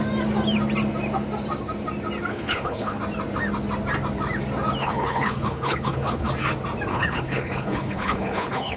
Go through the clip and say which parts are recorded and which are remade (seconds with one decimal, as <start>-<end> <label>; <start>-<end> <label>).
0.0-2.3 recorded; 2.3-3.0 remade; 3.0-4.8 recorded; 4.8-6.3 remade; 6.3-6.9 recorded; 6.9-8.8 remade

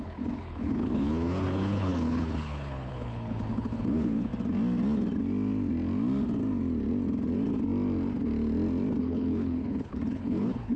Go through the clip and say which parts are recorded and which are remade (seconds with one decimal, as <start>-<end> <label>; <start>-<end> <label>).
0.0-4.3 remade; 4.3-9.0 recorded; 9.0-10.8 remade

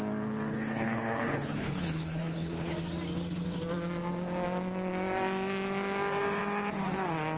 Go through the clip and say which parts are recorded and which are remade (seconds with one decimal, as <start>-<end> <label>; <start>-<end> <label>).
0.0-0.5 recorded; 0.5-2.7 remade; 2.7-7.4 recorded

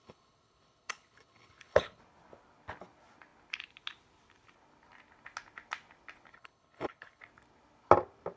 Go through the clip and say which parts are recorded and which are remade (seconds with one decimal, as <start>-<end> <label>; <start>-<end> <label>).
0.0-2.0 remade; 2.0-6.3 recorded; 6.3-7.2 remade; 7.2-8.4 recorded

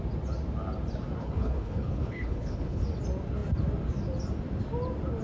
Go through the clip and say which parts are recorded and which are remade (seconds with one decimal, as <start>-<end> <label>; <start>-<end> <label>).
0.0-1.2 recorded; 1.2-2.8 remade; 2.8-5.2 recorded